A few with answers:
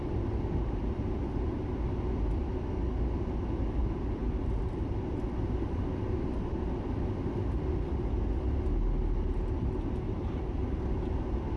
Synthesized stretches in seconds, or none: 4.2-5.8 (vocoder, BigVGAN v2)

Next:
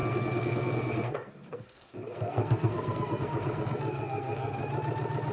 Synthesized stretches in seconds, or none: 0.0-4.6 (codec, SNAC)

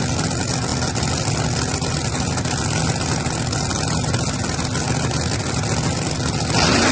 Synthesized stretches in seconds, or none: none